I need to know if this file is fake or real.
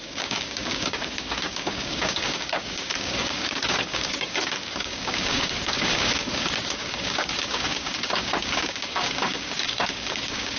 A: fake